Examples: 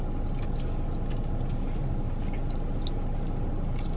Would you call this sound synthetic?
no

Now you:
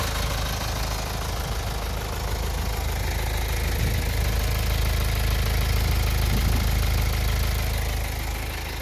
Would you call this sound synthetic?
no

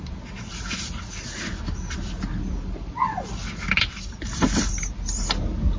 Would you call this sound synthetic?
no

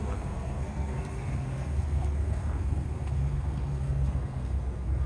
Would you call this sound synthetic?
yes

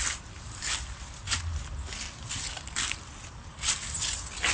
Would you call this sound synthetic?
no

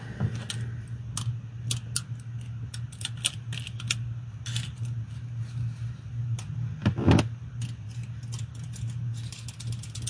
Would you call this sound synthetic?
no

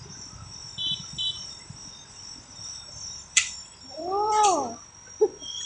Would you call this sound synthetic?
yes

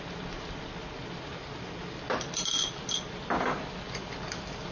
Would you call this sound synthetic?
no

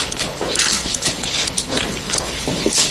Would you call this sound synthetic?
yes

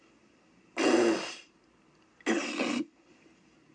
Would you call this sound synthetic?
no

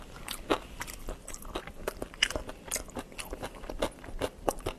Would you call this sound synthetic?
no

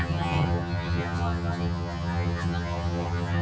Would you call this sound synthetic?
yes